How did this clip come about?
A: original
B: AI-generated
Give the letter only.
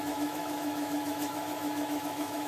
B